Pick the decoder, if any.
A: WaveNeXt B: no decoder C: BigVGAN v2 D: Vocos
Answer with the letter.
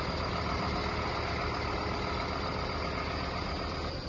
B